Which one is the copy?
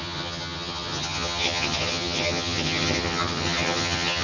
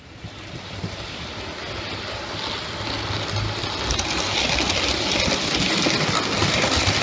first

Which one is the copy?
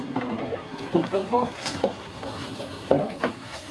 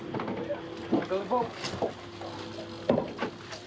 first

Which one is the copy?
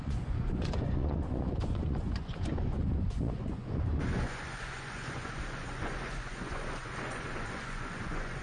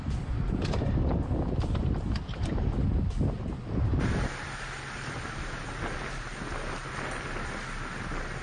first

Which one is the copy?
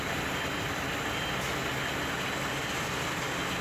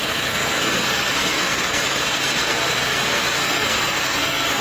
second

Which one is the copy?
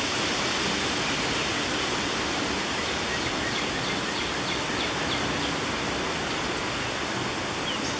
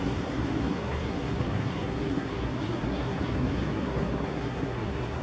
second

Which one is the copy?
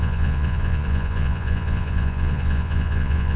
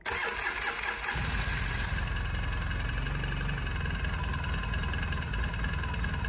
first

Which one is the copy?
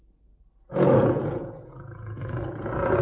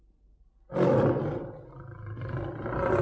first